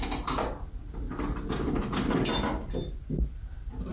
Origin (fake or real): real